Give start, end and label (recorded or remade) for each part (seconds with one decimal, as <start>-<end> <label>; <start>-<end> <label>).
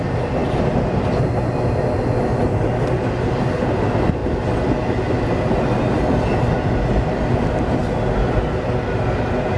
0.0-9.6 recorded